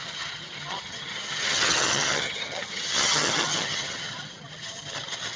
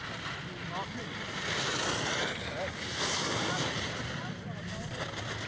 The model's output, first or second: first